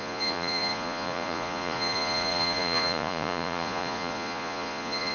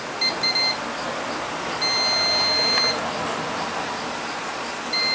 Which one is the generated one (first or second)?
first